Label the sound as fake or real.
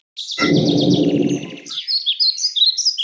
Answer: real